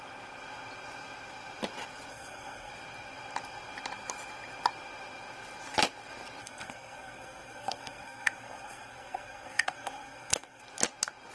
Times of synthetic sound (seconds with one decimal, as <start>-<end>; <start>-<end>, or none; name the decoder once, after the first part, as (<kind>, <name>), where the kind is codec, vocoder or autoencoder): 2.1-2.7 (codec, SNAC); 6.4-10.6